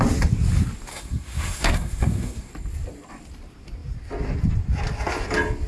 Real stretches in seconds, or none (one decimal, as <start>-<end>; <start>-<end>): 0.0-0.9; 2.5-5.7

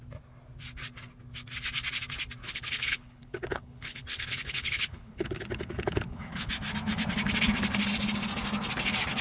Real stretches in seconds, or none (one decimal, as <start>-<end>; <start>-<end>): 0.0-2.4; 6.5-9.2

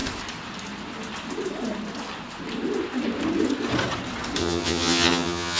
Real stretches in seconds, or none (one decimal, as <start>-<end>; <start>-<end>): 0.0-4.4

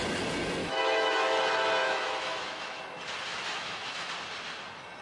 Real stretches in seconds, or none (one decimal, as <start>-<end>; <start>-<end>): 0.0-0.6; 1.4-1.8; 2.8-3.3; 4.1-5.0

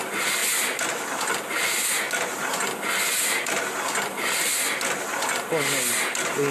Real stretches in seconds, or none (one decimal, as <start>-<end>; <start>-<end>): 0.0-6.5

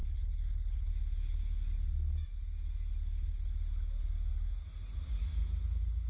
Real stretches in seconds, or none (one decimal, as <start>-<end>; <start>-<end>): 0.9-6.1

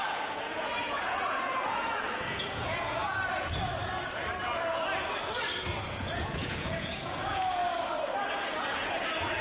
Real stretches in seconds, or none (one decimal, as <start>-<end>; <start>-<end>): 3.0-5.8; 7.6-8.3

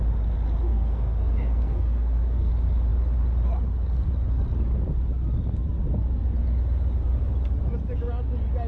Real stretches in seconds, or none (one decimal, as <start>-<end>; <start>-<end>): 0.0-0.7; 2.5-8.7